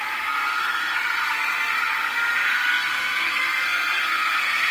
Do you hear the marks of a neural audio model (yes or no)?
yes